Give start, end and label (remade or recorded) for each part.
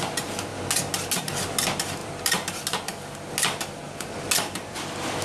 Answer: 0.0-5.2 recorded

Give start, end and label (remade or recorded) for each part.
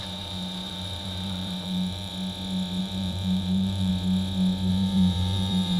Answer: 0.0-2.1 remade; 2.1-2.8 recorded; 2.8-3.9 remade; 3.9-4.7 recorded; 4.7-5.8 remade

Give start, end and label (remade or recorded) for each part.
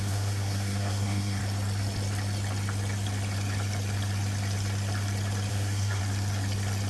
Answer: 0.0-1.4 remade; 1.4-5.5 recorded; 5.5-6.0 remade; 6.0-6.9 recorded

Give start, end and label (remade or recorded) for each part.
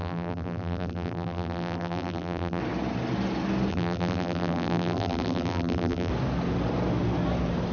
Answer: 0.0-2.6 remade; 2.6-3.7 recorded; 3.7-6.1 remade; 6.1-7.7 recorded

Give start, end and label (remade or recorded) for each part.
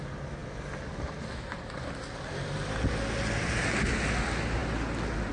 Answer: 0.0-5.3 recorded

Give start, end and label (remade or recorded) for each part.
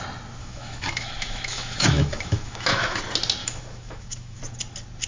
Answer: 0.0-0.4 recorded; 0.4-3.0 remade; 3.0-3.4 recorded; 3.4-4.4 remade; 4.4-5.1 recorded